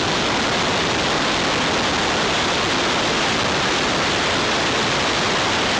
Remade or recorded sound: recorded